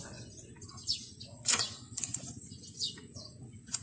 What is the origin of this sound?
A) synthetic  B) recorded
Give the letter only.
A